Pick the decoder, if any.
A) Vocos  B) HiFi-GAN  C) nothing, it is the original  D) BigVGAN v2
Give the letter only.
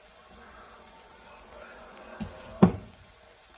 A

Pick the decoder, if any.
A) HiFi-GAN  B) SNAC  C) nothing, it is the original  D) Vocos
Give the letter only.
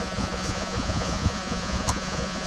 D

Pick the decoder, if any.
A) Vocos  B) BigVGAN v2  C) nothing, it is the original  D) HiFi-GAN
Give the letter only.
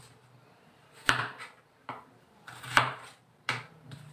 B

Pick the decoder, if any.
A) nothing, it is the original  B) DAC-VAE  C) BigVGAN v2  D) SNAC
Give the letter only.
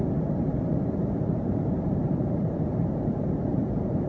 C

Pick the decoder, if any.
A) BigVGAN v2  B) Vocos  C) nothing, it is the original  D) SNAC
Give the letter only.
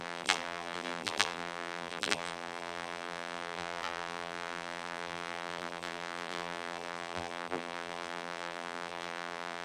A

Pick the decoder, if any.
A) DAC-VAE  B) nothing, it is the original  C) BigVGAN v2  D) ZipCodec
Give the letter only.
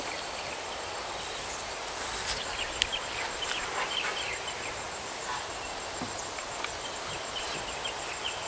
B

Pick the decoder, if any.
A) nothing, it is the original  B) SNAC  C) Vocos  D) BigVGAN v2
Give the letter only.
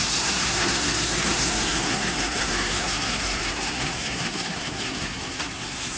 B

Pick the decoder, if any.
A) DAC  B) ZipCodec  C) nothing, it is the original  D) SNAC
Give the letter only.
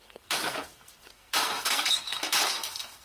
D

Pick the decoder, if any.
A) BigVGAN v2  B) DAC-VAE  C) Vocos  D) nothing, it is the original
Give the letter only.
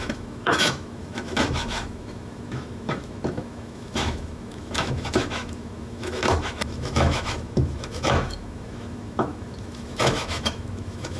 B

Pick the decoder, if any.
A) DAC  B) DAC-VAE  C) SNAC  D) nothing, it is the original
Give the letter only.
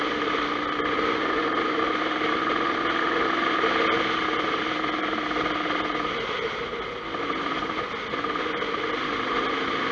D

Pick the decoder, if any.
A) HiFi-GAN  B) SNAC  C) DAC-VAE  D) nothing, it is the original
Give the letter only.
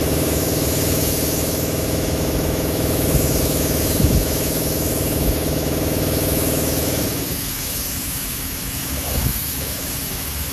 C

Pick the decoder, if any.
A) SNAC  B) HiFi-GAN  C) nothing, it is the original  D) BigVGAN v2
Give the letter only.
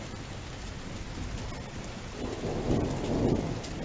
C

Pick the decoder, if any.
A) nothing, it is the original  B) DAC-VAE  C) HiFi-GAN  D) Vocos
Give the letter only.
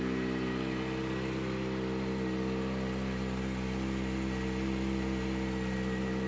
A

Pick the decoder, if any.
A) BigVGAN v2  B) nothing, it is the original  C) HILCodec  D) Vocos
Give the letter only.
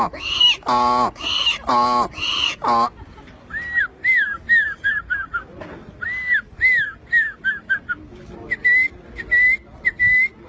B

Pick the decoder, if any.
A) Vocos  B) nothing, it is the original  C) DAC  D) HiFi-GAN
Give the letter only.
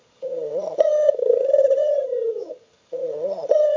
D